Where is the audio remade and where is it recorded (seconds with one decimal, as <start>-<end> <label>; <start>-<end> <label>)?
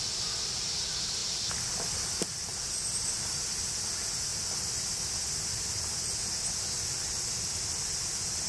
0.0-8.5 recorded